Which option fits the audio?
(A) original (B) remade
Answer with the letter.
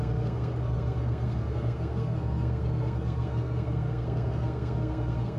B